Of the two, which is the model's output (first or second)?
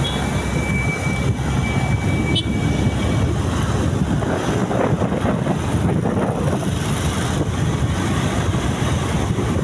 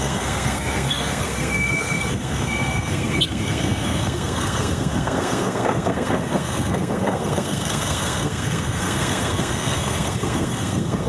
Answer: second